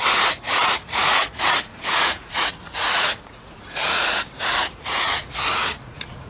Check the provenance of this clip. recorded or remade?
remade